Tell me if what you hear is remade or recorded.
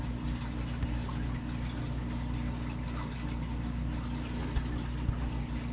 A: recorded